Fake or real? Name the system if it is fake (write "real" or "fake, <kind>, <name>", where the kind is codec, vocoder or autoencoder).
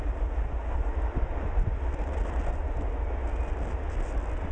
real